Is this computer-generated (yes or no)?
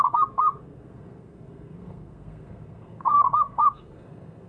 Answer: yes